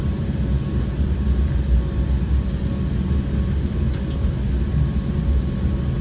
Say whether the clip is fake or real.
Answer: real